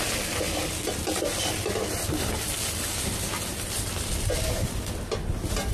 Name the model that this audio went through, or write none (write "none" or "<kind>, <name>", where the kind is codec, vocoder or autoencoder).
none